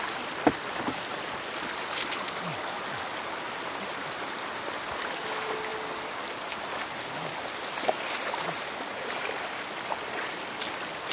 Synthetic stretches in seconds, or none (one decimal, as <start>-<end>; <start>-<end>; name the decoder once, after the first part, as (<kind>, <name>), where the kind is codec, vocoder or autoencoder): none